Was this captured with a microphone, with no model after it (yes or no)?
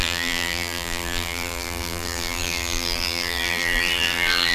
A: no